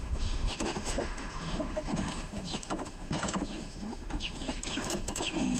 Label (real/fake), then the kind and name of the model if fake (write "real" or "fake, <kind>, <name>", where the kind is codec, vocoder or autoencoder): fake, autoencoder, DAC-VAE